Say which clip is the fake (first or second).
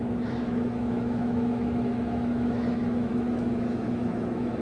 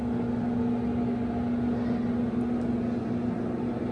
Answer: first